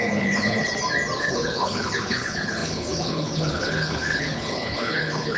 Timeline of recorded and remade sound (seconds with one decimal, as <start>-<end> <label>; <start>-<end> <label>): 0.0-0.7 remade; 0.7-1.2 recorded; 1.2-5.4 remade